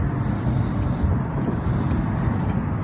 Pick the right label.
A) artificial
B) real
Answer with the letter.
A